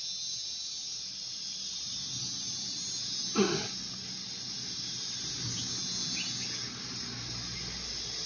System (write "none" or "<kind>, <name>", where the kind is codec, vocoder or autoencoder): none